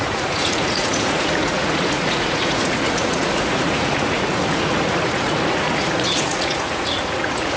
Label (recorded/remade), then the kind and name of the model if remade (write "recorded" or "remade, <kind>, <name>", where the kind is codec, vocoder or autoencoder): remade, vocoder, Vocos